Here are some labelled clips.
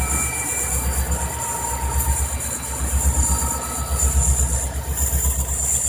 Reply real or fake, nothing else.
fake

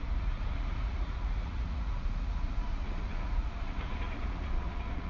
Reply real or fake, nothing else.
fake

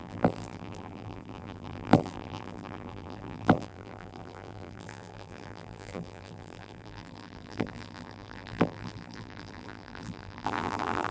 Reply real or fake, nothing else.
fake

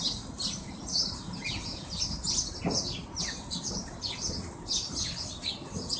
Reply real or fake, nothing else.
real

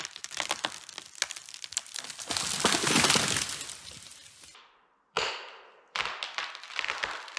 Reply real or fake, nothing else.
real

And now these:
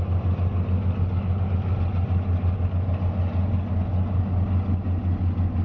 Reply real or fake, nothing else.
real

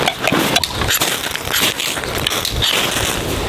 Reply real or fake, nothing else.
real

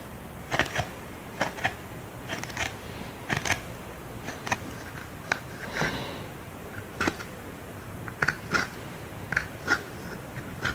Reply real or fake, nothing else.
real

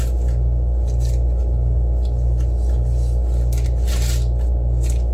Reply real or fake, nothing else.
real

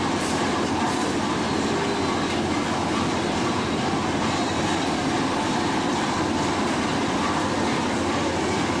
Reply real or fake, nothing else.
real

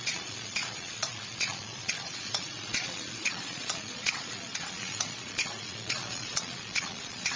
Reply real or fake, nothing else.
fake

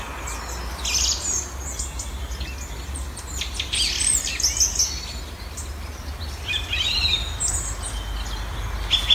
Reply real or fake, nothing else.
real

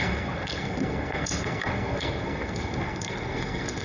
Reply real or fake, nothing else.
fake